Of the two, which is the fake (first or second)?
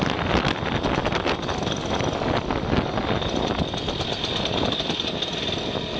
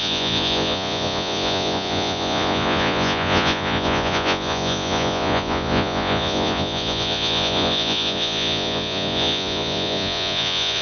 second